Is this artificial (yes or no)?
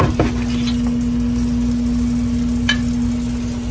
no